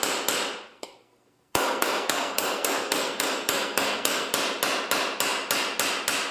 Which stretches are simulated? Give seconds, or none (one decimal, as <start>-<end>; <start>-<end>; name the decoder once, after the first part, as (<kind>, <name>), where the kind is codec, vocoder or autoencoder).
0.7-4.3 (codec, SNAC)